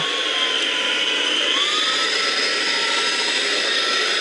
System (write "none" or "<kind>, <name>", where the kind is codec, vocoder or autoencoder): none